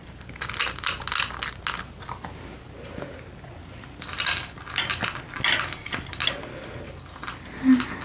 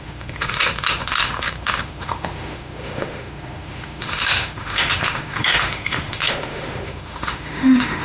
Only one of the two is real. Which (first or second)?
first